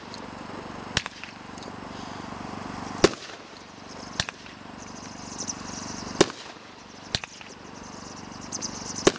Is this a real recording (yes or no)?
yes